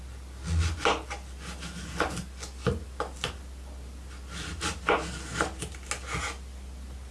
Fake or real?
real